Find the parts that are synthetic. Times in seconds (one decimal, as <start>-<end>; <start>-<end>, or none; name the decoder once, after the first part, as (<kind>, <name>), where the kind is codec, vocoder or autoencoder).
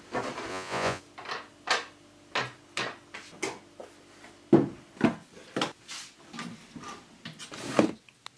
0.5-1.0 (vocoder, Vocos)